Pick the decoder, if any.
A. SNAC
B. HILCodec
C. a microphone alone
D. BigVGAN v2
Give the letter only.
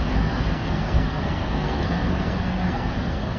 A